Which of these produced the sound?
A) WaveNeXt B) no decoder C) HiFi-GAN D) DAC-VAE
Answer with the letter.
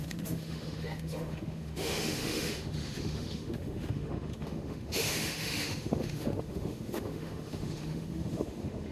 D